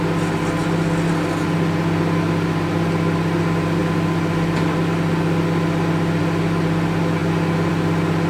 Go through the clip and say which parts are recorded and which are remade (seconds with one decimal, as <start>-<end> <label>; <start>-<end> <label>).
0.0-8.3 recorded